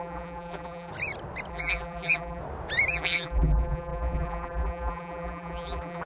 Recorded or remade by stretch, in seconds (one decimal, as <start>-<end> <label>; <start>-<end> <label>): 0.0-0.9 remade; 0.9-1.5 recorded; 1.5-2.4 remade; 2.4-2.9 recorded; 2.9-6.1 remade